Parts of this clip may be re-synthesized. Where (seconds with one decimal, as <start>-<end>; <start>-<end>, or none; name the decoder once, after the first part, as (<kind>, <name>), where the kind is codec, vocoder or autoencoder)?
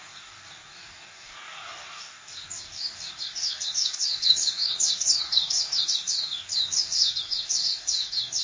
0.0-8.4 (codec, DAC)